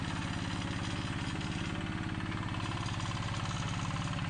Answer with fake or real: real